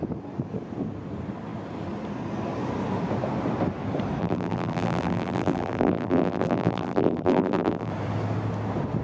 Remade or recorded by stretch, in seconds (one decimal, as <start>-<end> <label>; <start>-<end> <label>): 0.0-4.2 recorded; 4.2-7.9 remade; 7.9-9.0 recorded